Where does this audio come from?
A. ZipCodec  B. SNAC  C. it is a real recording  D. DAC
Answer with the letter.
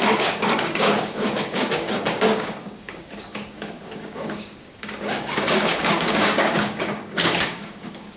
D